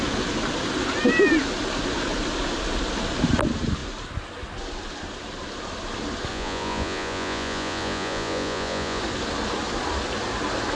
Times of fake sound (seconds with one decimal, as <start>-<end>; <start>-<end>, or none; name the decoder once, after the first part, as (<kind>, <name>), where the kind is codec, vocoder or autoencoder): 6.3-9.0 (vocoder, Vocos)